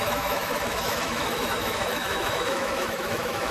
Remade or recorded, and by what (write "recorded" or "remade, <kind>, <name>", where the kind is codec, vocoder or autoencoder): remade, autoencoder, DAC-VAE